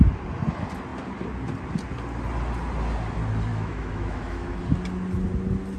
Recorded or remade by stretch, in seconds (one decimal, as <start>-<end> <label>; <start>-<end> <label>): 0.0-3.5 recorded; 3.5-4.6 remade; 4.6-5.8 recorded